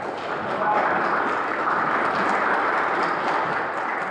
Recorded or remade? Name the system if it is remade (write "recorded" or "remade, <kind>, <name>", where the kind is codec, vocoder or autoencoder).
recorded